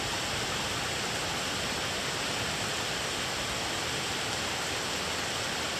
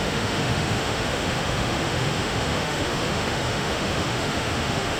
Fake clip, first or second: second